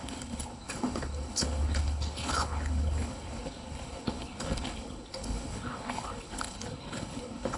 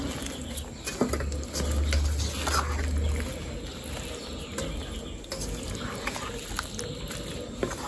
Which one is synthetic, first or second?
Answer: first